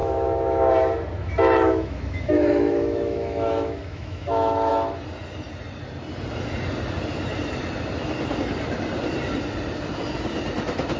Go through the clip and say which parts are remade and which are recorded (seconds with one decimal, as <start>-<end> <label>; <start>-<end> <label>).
0.0-0.7 remade; 0.7-1.2 recorded; 1.2-4.7 remade; 4.7-11.0 recorded